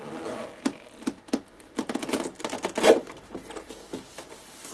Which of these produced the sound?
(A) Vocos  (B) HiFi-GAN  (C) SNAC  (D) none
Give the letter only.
D